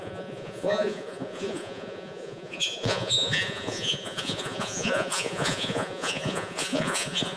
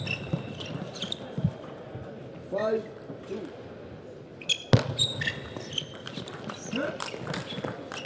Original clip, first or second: second